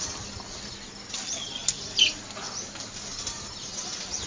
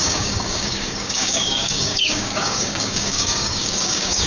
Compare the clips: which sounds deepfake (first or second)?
second